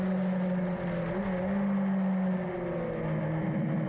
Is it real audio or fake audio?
real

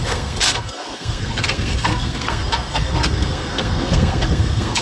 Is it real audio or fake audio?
fake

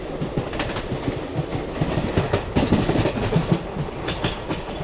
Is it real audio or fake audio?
real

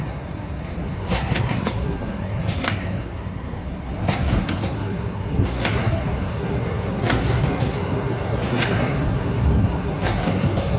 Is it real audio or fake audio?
fake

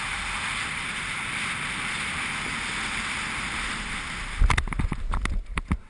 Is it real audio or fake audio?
real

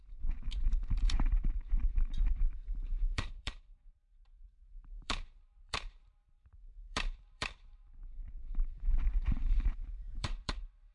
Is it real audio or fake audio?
fake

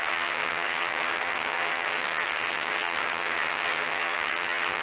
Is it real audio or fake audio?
fake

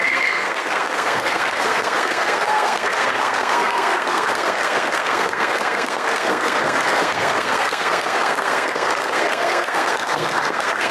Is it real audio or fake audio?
fake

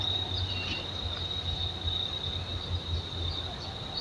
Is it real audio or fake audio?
real